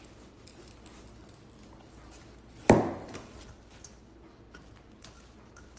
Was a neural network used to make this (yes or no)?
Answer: no